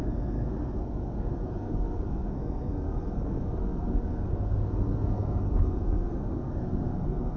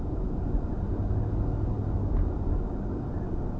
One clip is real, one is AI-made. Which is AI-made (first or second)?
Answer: first